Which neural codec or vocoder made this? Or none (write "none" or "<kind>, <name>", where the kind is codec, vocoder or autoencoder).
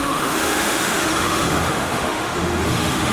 autoencoder, DAC-VAE